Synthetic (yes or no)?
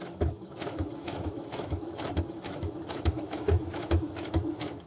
yes